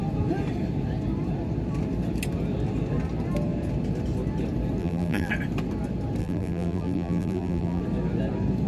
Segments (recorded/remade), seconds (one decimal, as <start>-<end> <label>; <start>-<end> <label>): 0.0-4.8 recorded; 4.8-5.3 remade; 5.3-6.2 recorded; 6.2-7.8 remade; 7.8-8.7 recorded